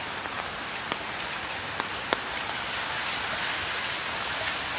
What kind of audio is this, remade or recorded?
recorded